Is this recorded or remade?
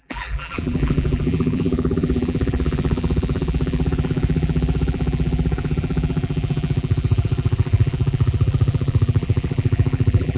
remade